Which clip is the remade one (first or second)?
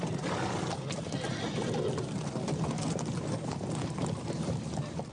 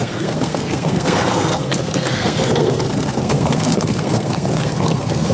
second